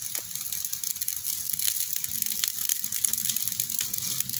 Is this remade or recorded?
recorded